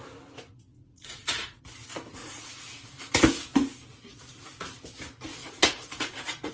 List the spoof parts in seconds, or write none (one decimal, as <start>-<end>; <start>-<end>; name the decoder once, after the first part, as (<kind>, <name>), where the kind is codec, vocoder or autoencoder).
0.7-1.6 (vocoder, Vocos); 2.2-3.0; 5.4-6.5